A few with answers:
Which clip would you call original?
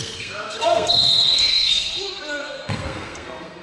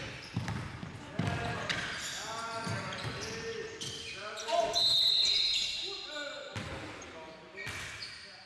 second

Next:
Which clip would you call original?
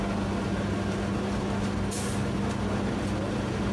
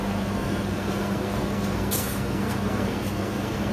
first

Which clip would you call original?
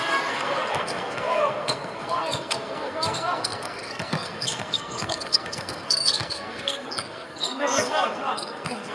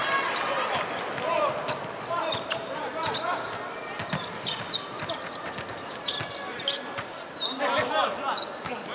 second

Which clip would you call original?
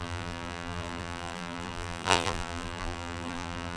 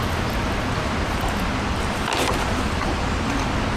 second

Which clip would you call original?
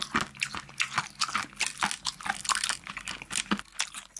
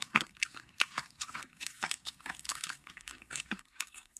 first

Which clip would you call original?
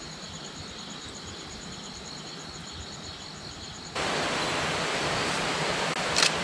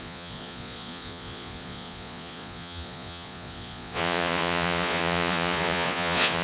first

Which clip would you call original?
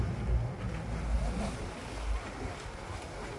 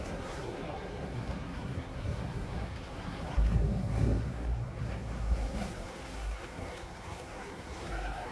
first